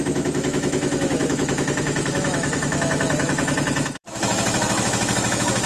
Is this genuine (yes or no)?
no